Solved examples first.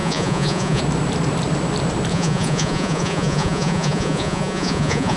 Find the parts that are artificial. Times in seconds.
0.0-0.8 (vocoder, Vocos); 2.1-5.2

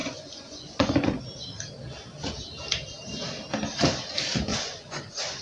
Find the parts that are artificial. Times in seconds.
0.0-1.2 (vocoder, Vocos); 4.5-5.4